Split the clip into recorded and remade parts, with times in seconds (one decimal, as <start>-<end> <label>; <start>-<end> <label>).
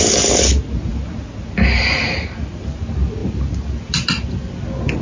0.0-5.0 recorded